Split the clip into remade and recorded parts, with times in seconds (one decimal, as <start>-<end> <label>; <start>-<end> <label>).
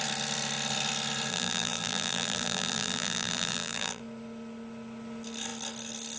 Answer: 0.0-1.3 recorded; 1.3-4.0 remade; 4.0-6.2 recorded